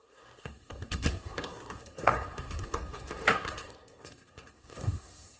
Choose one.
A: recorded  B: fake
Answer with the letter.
B